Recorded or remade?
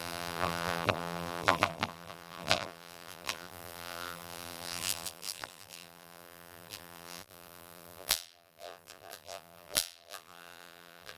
remade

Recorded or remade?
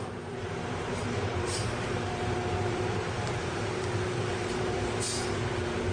remade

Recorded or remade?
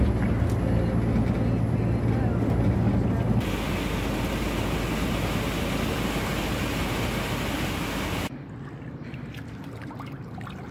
recorded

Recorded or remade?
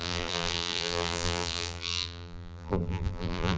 remade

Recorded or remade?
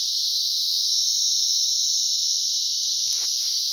recorded